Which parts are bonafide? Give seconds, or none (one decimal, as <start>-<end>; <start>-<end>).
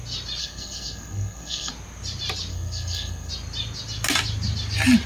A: 0.0-0.4; 1.7-2.5; 3.3-5.1